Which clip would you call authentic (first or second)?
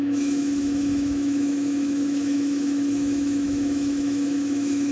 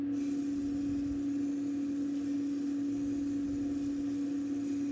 second